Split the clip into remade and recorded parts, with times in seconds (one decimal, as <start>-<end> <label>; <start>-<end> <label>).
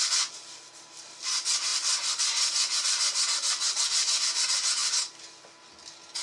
0.0-6.2 recorded